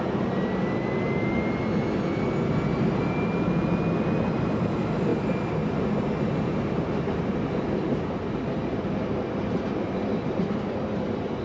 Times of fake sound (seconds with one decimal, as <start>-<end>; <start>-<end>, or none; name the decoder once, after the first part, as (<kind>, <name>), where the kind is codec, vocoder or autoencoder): none